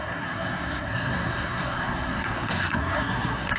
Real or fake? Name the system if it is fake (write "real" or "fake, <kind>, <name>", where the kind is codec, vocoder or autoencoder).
fake, codec, SNAC